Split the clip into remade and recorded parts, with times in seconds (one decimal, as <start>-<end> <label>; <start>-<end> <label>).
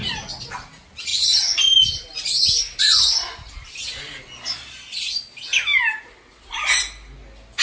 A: 0.0-7.6 recorded